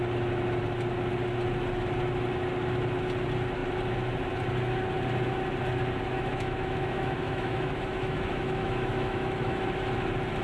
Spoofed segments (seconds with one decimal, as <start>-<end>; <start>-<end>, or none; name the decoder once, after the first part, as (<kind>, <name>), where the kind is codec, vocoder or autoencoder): 6.1-9.6 (autoencoder, DAC-VAE)